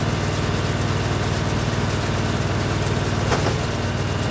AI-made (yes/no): no